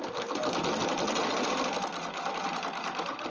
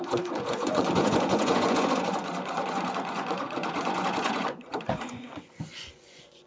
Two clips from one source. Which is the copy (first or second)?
second